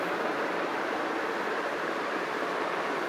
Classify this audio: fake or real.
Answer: fake